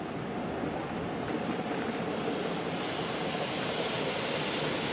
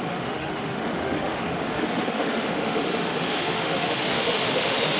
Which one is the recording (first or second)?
first